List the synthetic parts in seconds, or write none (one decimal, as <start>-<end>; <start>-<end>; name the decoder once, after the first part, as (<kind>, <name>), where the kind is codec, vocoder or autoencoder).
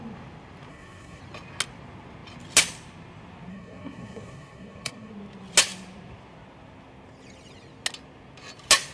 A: 0.7-1.2 (codec, SNAC); 3.5-5.1